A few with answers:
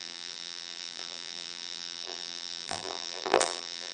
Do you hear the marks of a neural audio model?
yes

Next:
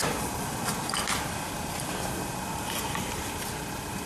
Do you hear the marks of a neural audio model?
yes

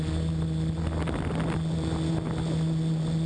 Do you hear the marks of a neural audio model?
no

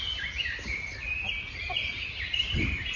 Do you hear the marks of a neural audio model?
no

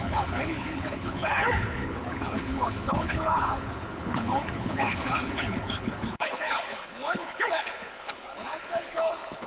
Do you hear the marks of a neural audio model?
yes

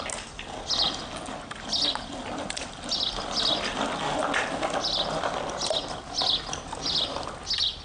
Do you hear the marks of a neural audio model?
no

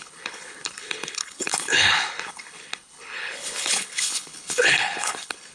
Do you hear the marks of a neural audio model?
yes